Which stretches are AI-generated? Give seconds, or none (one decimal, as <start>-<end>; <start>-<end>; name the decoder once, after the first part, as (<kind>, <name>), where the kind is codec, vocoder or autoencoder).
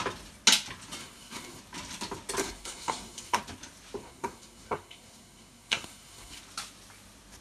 1.0-1.6 (codec, SNAC); 2.4-3.4; 4.0-6.4